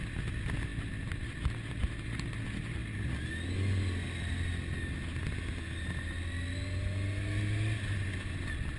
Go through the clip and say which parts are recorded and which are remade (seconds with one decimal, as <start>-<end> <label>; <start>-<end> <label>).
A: 0.0-8.8 recorded